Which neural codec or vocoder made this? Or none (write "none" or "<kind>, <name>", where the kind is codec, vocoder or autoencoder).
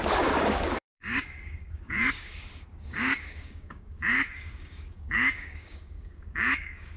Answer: codec, DAC